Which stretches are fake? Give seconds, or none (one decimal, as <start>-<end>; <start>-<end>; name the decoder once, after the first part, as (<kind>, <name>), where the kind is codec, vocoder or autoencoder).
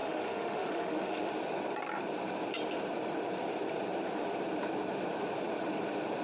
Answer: 0.0-1.3 (autoencoder, DAC-VAE)